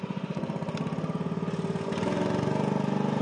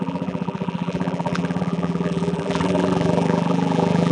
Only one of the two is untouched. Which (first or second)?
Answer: first